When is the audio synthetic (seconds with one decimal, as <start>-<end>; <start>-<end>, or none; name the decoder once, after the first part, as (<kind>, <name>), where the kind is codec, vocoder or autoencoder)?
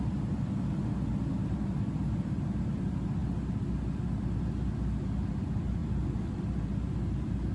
1.4-2.4 (vocoder, BigVGAN v2); 5.8-6.4